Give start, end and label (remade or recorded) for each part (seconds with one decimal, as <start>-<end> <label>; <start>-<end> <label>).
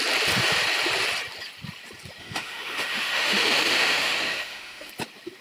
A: 0.0-2.2 recorded; 2.2-4.9 remade; 4.9-5.4 recorded